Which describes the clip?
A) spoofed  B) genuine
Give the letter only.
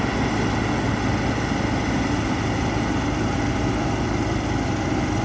B